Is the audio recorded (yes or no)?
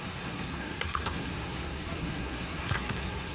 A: no